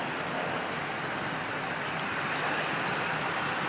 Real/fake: real